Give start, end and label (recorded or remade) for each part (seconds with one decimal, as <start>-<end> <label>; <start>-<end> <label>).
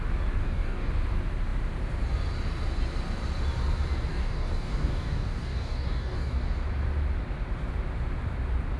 0.0-0.4 recorded; 0.4-0.9 remade; 0.9-4.1 recorded; 4.1-6.4 remade; 6.4-8.8 recorded